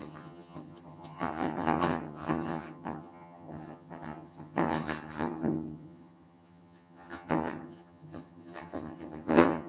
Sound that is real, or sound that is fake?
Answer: fake